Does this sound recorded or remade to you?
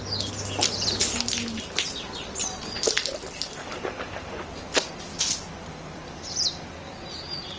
recorded